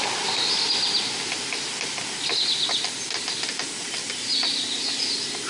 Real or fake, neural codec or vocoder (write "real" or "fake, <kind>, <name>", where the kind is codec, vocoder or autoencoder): real